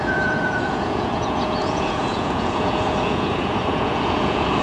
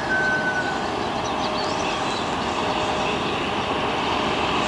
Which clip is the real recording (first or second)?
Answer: second